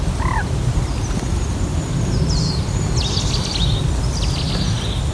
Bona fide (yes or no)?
yes